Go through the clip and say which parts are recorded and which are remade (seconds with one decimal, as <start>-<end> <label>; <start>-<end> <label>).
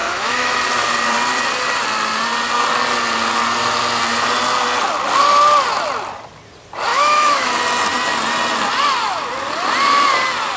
0.0-0.6 remade; 0.6-6.9 recorded; 6.9-7.5 remade; 7.5-10.6 recorded